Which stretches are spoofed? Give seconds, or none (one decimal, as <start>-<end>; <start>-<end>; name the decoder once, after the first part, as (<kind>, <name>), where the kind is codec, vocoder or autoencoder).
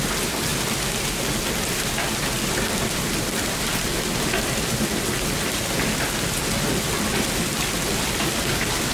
none